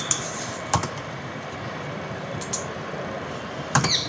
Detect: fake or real fake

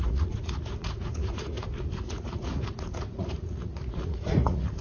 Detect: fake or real fake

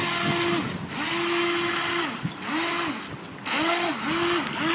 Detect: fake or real real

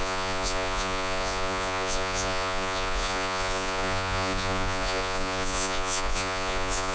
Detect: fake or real fake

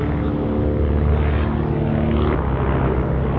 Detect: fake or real real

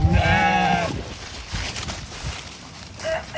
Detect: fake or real fake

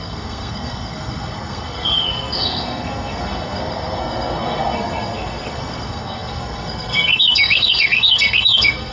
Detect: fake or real fake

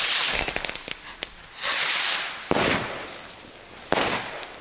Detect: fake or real real